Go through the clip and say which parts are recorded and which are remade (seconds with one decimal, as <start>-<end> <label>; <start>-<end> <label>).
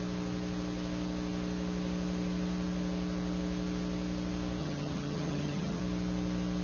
0.0-4.6 recorded; 4.6-5.8 remade; 5.8-6.6 recorded